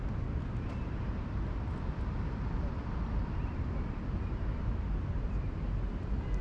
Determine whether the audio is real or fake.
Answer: real